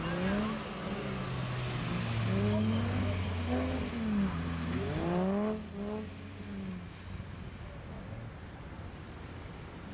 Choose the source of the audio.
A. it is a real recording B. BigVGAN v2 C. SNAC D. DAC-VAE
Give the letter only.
A